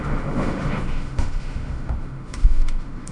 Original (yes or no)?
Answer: no